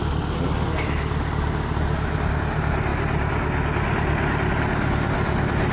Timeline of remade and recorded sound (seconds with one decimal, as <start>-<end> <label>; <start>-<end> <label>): 0.0-5.7 recorded